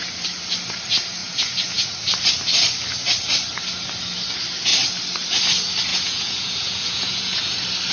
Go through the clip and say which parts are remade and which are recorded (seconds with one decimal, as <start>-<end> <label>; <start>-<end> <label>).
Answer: 0.0-1.2 recorded; 1.2-1.9 remade; 1.9-5.9 recorded; 5.9-7.5 remade; 7.5-7.9 recorded